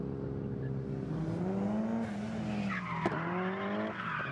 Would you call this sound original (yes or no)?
yes